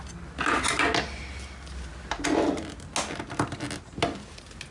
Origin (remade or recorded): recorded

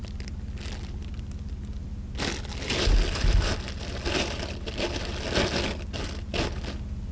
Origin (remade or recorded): recorded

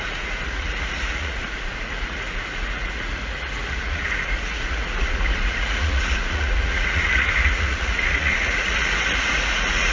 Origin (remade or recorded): remade